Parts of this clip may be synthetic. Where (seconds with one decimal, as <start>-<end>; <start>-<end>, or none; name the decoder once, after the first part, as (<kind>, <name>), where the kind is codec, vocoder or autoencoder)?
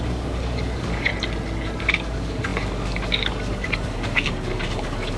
0.0-1.1 (codec, DAC); 1.8-5.2